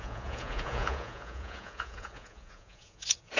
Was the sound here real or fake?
fake